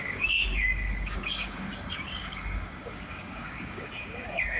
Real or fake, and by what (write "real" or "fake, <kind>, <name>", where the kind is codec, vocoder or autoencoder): fake, codec, DAC